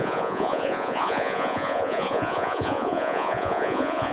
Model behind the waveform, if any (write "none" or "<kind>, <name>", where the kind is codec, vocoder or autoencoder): vocoder, Vocos